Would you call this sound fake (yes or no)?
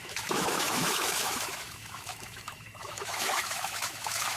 yes